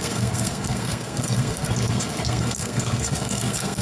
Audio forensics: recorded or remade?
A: remade